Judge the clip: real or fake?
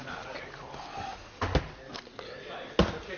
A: real